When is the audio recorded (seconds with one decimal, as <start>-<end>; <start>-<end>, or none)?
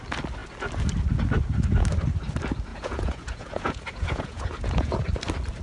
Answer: 0.0-2.7; 5.0-5.6